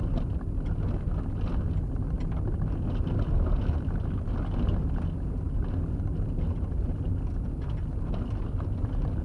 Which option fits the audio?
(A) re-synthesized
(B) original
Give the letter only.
B